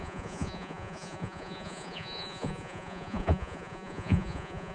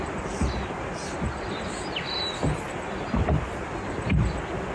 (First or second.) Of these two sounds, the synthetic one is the first